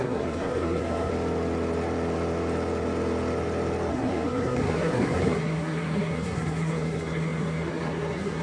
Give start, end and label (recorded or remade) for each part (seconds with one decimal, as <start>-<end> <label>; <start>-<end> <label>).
0.0-1.1 remade; 1.1-3.9 recorded; 3.9-8.4 remade